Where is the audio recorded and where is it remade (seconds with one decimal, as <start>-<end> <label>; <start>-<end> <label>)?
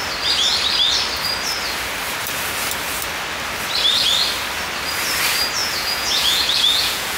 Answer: 0.0-5.6 recorded; 5.6-7.2 remade